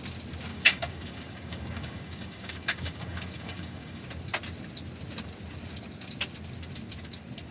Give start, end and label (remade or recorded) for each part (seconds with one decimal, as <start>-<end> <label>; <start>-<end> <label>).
0.0-0.5 recorded; 0.5-4.0 remade; 4.0-7.5 recorded